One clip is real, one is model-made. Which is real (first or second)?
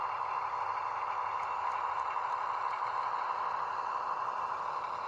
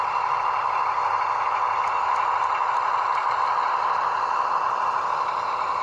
first